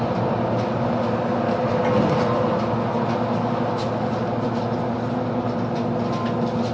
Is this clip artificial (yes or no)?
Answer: no